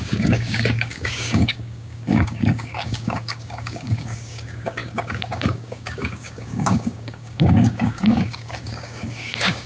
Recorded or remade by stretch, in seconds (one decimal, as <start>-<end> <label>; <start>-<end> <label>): 0.0-9.7 remade

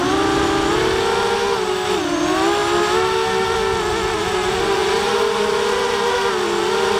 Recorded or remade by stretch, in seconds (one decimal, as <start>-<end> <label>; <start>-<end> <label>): 0.0-7.0 recorded

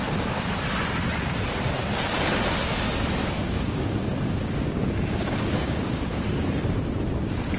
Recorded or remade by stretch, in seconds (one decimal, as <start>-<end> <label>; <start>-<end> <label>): 0.0-3.2 recorded; 3.2-6.1 remade; 6.1-7.6 recorded

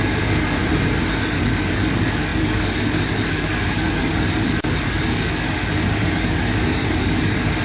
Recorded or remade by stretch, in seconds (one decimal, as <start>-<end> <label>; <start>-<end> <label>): 0.0-0.6 remade; 0.6-1.2 recorded; 1.2-7.6 remade